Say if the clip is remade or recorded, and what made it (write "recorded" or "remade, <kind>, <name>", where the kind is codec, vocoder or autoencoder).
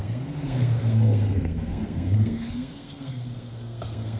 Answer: remade, codec, SNAC